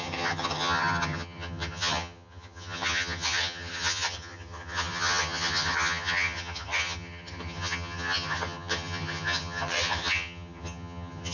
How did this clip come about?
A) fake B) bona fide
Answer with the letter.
A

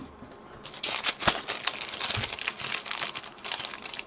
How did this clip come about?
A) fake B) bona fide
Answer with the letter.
B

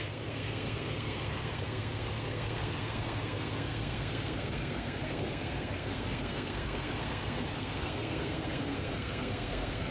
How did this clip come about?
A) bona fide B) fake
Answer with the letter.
B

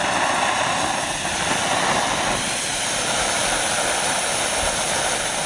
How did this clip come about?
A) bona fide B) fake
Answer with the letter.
A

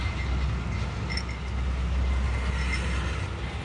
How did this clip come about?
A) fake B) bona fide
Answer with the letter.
B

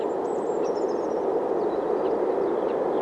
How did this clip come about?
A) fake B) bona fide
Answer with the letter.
B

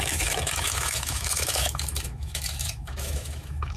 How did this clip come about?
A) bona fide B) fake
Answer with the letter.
B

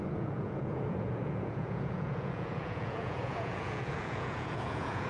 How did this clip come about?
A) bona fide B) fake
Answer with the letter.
B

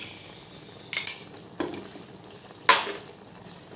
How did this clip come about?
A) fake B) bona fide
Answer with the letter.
B